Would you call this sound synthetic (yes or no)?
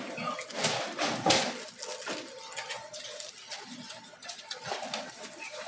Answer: no